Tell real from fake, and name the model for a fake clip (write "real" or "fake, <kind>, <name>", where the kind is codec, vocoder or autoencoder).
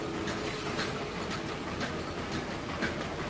real